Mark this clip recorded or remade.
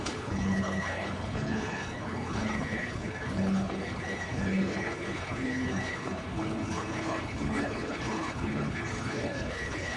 remade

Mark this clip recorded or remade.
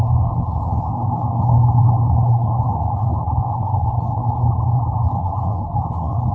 remade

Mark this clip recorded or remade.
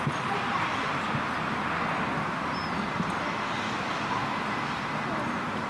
recorded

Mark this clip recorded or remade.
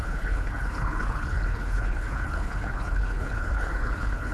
remade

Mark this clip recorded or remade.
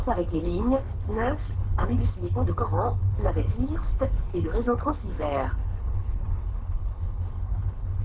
remade